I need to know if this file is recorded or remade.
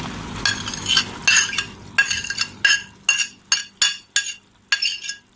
recorded